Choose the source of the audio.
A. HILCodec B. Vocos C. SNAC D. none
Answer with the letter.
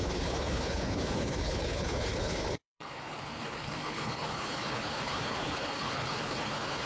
A